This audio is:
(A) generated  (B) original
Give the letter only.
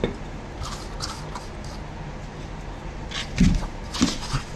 B